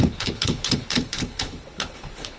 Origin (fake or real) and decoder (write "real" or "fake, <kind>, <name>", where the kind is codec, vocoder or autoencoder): fake, codec, HILCodec